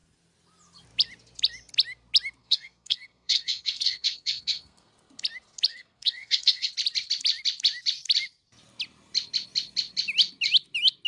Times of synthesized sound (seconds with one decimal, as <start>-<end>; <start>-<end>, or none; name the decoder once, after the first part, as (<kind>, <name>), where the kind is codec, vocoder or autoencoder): 2.4-4.9 (codec, SNAC); 5.7-6.7